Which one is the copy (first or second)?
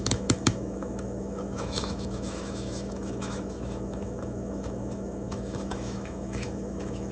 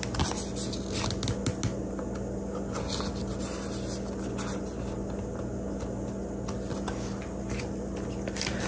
first